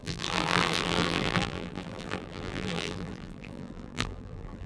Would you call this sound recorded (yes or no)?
no